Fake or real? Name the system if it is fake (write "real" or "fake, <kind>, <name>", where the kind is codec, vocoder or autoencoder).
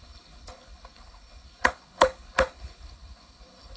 fake, codec, HILCodec